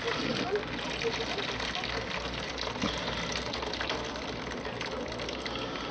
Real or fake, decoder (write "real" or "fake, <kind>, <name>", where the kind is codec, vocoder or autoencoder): real